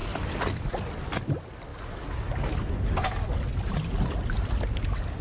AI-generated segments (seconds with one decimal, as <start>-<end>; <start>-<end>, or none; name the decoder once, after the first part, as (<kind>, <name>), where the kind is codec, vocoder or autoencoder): none